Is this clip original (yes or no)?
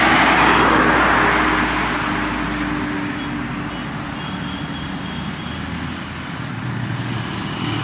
yes